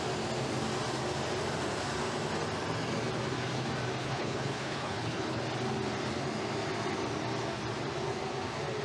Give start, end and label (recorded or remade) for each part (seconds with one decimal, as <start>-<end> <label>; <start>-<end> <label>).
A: 0.0-4.0 recorded; 4.0-5.4 remade; 5.4-8.8 recorded